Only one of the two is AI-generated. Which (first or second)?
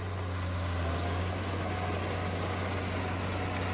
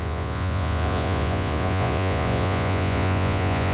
second